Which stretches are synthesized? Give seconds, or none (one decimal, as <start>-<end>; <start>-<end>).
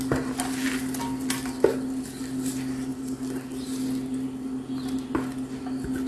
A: none